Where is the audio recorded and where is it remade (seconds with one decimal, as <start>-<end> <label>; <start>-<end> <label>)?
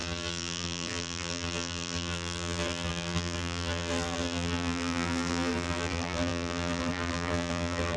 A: 0.0-8.0 remade